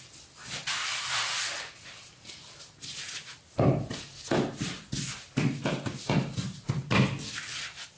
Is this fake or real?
real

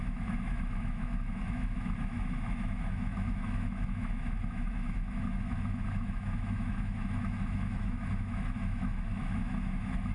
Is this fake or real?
fake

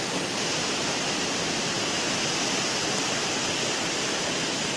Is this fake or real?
real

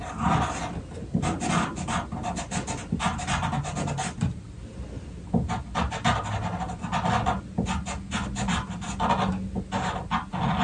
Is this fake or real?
real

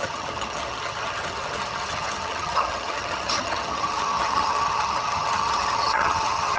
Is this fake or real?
fake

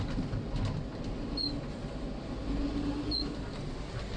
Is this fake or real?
real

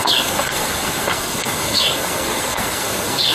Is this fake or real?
fake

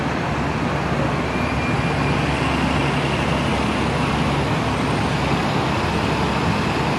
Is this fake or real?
real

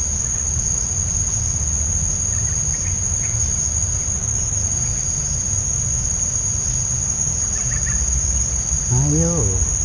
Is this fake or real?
real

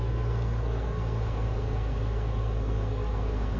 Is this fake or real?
fake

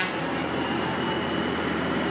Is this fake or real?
real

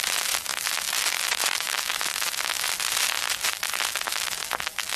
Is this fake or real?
real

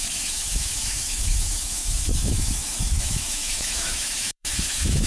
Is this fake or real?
fake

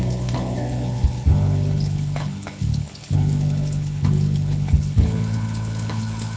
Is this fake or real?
fake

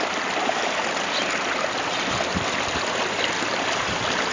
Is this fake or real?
real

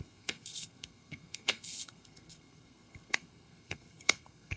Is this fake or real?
fake